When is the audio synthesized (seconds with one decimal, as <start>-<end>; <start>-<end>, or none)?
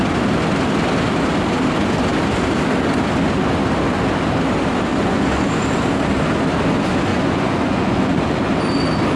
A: 4.9-5.5; 7.1-8.5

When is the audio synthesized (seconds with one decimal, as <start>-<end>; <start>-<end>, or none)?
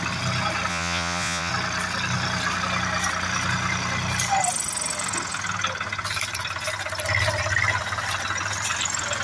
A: 0.7-1.5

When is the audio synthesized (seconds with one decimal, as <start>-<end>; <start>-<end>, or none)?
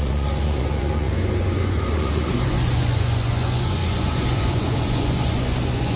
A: 0.0-6.0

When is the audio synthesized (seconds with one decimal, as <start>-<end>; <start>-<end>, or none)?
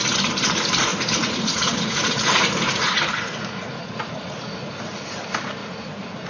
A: 0.9-4.7; 5.6-6.3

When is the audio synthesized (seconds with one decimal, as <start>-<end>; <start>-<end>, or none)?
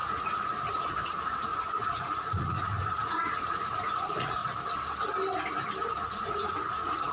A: 0.0-4.4; 6.0-7.1